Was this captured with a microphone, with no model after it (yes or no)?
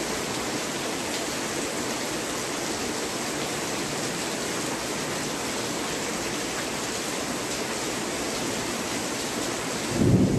yes